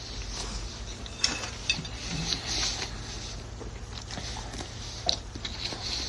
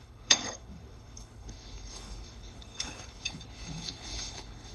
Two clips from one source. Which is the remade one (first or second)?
second